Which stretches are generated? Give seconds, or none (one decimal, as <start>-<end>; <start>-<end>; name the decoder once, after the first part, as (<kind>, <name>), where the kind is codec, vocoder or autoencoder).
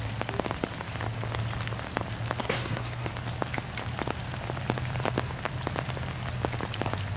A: 2.4-3.1 (codec, SNAC)